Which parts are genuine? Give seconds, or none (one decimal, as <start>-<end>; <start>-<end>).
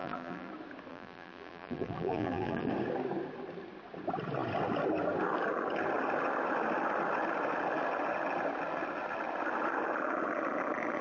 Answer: 0.5-0.9; 2.7-11.0